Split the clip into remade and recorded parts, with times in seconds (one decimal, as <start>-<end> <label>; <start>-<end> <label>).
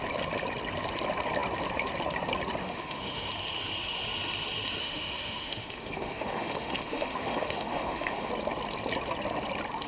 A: 0.0-2.6 recorded; 2.6-3.3 remade; 3.3-4.8 recorded; 4.8-8.3 remade; 8.3-9.9 recorded